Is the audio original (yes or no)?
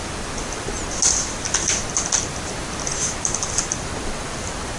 yes